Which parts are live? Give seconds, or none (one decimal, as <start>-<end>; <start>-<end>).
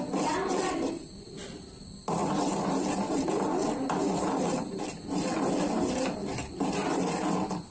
0.0-7.7